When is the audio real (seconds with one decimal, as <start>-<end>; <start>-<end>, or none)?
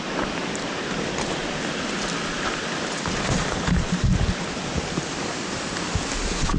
0.0-6.6